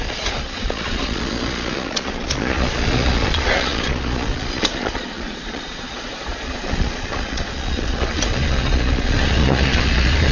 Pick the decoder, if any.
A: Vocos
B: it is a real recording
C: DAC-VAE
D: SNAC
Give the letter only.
A